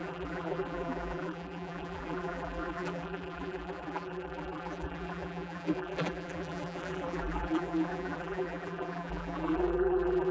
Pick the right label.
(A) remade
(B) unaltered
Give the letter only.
A